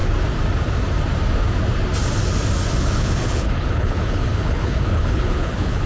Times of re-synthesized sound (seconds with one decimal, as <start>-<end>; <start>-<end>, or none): 2.8-5.9